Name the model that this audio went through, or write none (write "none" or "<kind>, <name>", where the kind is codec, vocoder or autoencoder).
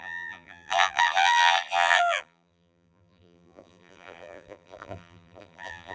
vocoder, BigVGAN v2